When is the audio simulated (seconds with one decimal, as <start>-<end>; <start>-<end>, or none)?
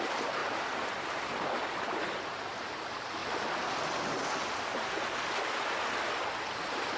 0.4-2.2